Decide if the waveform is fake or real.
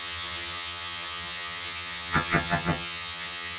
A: fake